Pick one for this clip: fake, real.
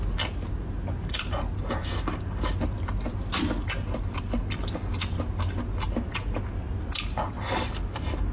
real